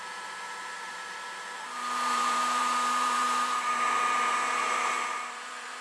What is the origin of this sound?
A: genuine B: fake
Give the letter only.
B